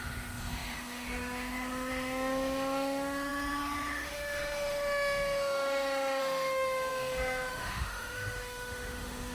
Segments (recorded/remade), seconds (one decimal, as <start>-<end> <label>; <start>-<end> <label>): 0.0-9.3 remade